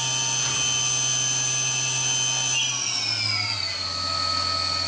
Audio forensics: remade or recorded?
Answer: recorded